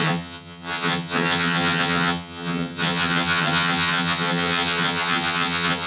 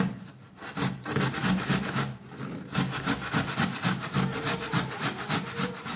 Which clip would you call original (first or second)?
second